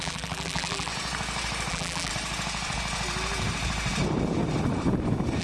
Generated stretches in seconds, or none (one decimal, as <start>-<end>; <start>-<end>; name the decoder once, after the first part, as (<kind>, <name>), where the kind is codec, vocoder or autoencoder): 0.0-0.9 (vocoder, BigVGAN v2); 1.7-2.1